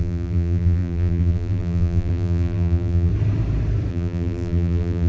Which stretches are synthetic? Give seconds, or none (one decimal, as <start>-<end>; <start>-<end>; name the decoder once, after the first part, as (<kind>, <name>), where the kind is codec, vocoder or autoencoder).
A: 0.0-3.1 (vocoder, BigVGAN v2); 3.9-5.1